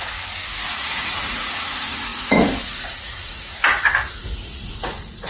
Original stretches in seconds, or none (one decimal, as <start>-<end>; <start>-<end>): 0.0-0.7